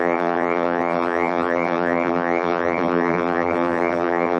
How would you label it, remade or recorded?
remade